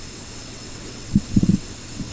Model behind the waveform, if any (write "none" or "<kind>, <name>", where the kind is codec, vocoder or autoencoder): vocoder, WaveNeXt